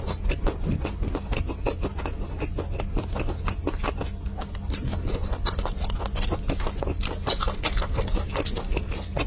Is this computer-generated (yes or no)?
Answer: no